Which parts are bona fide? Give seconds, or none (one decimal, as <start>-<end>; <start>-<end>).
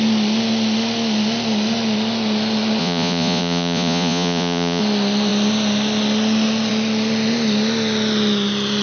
0.0-2.8; 4.8-8.8